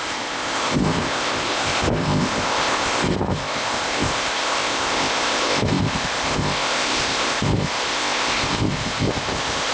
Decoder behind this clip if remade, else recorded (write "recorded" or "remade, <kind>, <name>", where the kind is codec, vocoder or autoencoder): remade, codec, ZipCodec